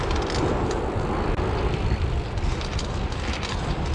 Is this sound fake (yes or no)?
no